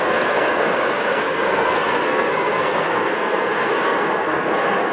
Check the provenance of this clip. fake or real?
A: fake